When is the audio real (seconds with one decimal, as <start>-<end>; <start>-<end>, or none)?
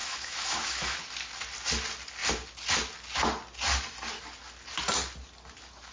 1.0-5.9